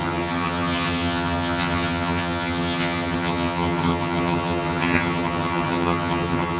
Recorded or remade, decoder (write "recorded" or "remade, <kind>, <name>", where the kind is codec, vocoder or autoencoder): remade, vocoder, HiFi-GAN